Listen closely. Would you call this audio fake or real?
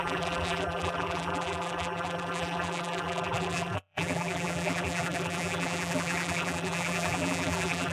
fake